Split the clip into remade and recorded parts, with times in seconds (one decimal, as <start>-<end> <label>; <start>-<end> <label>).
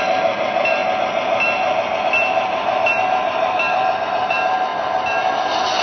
0.0-4.7 remade; 4.7-5.8 recorded